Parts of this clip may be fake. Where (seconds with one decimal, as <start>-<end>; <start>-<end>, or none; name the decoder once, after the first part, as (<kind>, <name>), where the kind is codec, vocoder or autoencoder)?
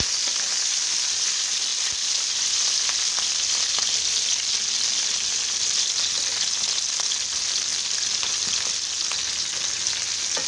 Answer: none